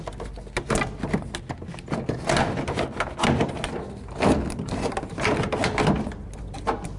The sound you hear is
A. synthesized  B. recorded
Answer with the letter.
B